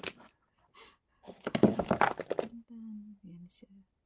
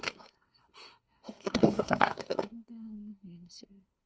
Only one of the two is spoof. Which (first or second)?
second